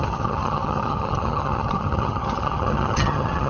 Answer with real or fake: fake